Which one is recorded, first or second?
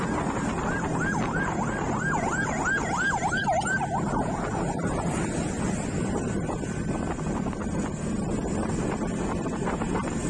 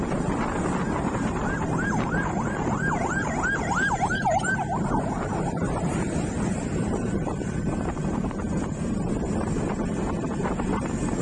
first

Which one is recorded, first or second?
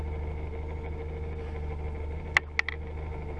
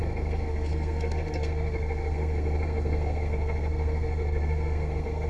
first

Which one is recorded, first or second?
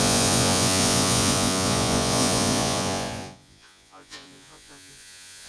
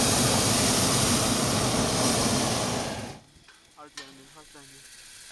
second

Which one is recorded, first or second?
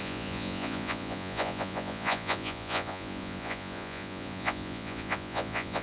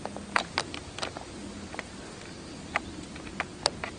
second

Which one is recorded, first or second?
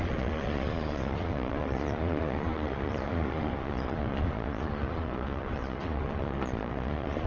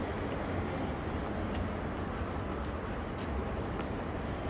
second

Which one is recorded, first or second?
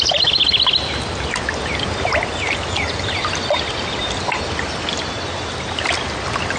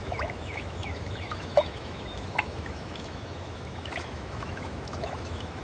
first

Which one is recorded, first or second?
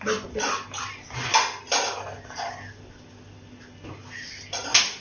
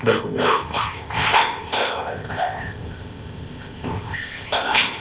first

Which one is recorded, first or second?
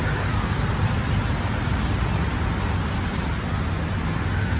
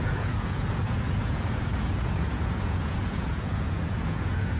first